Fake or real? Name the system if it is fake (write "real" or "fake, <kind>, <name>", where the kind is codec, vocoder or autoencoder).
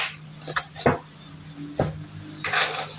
real